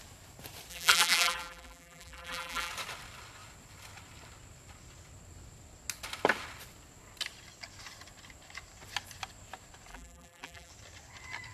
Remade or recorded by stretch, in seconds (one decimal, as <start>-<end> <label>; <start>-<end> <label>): 0.0-0.7 recorded; 0.7-2.7 remade; 2.7-9.9 recorded; 9.9-10.7 remade; 10.7-11.5 recorded